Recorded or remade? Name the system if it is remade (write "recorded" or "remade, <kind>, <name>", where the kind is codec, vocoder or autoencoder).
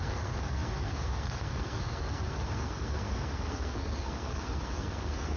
remade, codec, SNAC